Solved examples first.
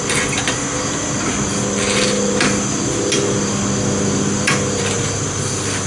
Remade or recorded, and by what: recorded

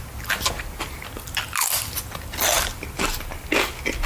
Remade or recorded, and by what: recorded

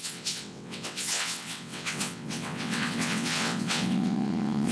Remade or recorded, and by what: remade, vocoder, WaveNeXt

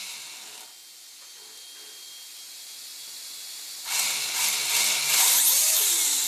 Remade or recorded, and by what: recorded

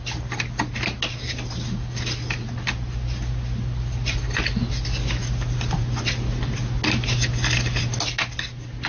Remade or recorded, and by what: recorded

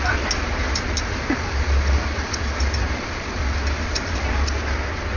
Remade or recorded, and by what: recorded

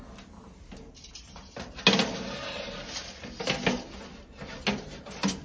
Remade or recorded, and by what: recorded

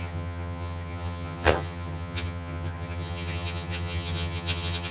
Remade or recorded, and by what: remade, vocoder, HiFi-GAN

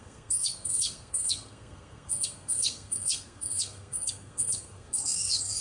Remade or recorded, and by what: remade, codec, SNAC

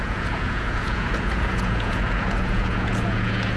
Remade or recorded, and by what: remade, vocoder, Vocos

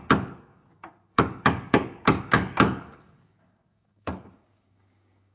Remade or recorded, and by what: remade, codec, DAC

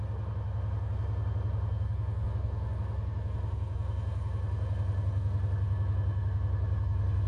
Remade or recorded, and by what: recorded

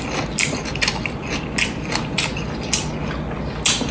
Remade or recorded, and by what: recorded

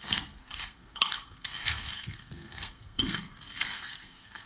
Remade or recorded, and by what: remade, codec, SNAC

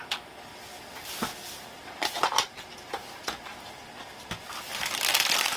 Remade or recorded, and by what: recorded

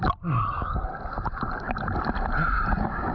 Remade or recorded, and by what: recorded